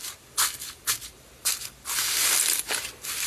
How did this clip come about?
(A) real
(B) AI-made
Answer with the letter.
A